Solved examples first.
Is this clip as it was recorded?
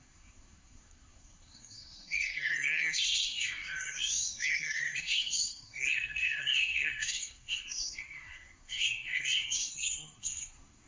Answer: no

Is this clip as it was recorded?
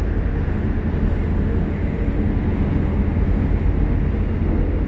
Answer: yes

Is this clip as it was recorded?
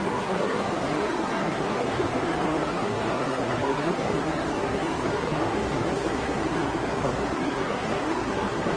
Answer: no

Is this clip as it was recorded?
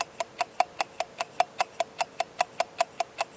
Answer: yes